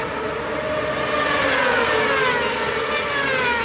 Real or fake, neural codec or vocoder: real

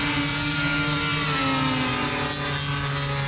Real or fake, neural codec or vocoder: real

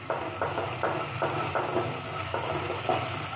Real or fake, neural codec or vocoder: real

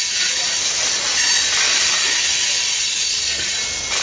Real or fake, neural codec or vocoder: real